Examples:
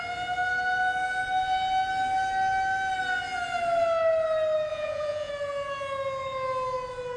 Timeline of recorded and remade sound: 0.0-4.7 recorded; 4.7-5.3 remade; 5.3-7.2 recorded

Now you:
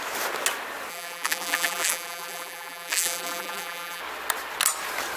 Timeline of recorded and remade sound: 0.0-0.9 recorded; 0.9-4.0 remade; 4.0-5.2 recorded

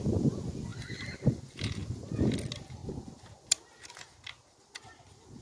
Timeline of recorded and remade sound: 0.0-5.4 recorded